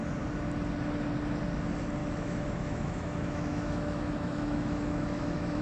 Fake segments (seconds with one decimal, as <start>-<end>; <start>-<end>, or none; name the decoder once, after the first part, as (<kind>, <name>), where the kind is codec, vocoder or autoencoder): 2.0-5.6 (autoencoder, DAC-VAE)